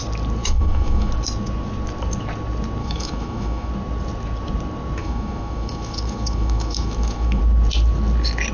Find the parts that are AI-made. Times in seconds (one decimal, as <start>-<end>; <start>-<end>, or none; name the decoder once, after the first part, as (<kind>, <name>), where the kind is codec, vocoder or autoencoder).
0.4-1.1 (autoencoder, DAC-VAE); 2.8-3.7; 5.0-7.4